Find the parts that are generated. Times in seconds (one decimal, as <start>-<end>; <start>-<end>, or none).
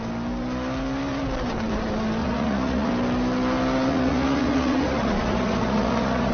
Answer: 2.2-2.9; 3.9-6.3